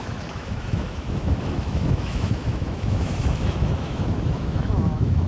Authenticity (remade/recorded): remade